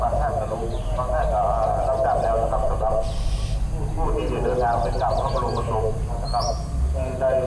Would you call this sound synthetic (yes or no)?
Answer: no